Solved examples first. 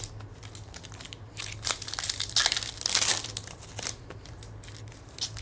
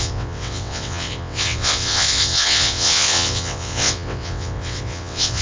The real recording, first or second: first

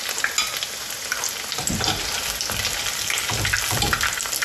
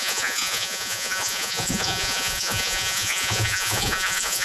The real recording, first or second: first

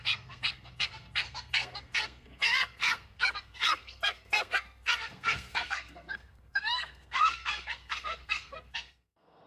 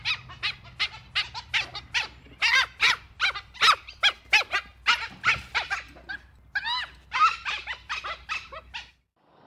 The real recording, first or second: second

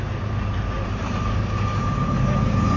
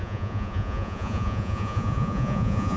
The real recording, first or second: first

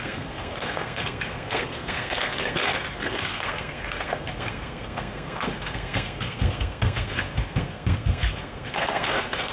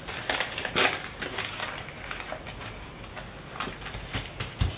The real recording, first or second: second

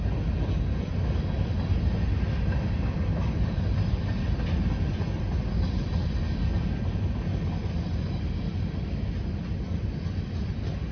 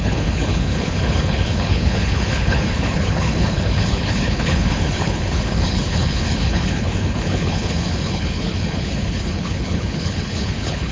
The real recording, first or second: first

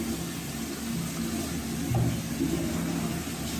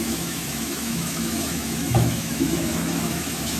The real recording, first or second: first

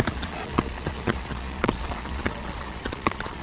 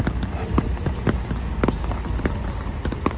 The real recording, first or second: second